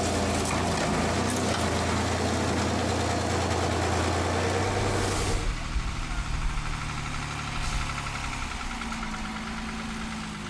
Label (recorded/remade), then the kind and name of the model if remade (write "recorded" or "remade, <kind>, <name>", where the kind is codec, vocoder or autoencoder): recorded